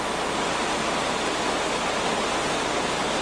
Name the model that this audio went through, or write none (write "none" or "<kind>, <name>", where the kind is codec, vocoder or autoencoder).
none